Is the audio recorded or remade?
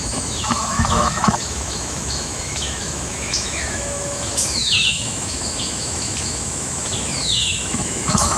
remade